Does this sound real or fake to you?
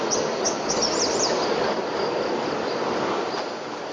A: real